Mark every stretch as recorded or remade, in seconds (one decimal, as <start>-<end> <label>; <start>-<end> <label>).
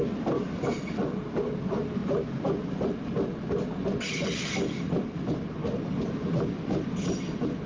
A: 0.0-7.7 recorded